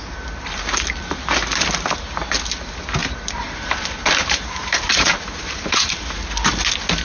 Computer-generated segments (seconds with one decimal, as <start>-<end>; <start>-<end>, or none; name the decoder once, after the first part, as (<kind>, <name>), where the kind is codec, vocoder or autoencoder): 3.0-6.0 (vocoder, BigVGAN v2)